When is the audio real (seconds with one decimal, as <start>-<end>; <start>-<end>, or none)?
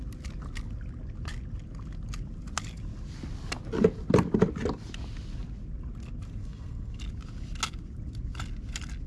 0.0-6.4; 7.0-9.1